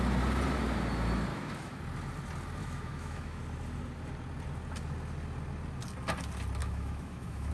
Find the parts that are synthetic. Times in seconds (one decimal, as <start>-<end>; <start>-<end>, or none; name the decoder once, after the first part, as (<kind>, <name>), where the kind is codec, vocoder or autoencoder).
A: 1.3-1.8 (autoencoder, DAC-VAE); 2.6-3.4; 6.6-7.5